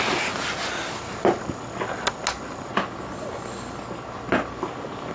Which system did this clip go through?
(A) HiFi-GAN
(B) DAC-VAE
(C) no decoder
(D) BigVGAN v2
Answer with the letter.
C